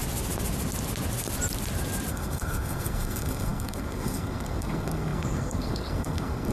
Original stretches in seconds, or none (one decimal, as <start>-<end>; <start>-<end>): 0.0-2.1